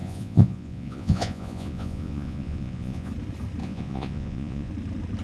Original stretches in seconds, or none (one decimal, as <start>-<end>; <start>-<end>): 3.1-3.6; 4.7-5.2